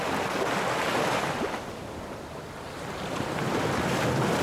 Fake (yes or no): no